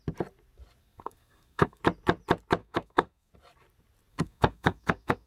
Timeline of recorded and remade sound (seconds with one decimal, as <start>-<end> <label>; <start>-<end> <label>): 0.0-0.8 recorded; 0.8-1.8 remade; 1.8-2.6 recorded; 2.6-3.3 remade; 3.3-4.1 recorded; 4.1-5.3 remade